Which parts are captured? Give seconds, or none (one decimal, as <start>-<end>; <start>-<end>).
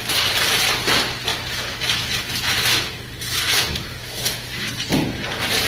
0.0-1.3; 4.7-5.7